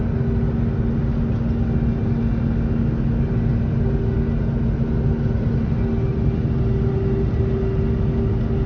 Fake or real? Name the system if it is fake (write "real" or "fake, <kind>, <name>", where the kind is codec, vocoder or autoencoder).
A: real